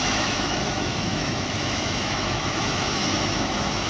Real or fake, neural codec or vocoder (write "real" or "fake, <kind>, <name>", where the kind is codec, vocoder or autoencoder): fake, autoencoder, DAC-VAE